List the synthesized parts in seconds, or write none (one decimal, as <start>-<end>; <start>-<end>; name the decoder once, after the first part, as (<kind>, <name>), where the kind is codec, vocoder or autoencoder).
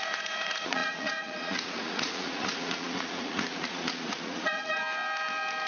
0.0-4.8 (vocoder, Vocos)